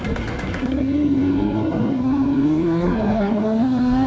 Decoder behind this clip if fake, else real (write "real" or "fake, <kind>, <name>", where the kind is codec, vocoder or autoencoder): fake, codec, SNAC